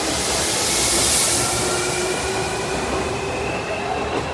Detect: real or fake real